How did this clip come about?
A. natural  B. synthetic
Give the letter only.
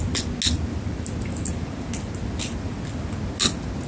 A